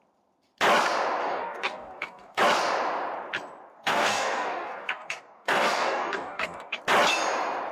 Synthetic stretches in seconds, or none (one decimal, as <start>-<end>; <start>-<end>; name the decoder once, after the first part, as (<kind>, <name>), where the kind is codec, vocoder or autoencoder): 1.2-2.4 (codec, DAC); 3.7-6.8